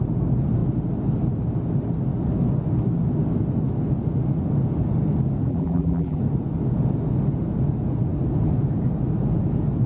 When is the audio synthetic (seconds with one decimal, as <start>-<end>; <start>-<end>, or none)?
5.5-6.2